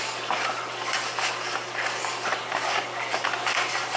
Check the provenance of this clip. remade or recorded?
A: recorded